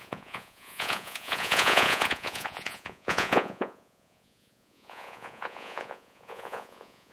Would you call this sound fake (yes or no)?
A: yes